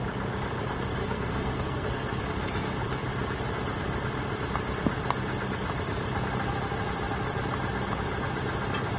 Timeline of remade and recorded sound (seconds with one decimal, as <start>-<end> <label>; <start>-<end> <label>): 0.0-1.0 recorded; 1.0-2.2 remade; 2.2-9.0 recorded